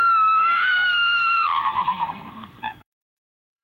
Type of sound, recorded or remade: remade